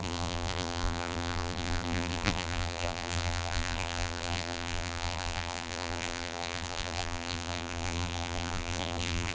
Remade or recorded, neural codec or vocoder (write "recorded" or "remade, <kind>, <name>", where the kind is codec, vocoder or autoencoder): remade, vocoder, BigVGAN v2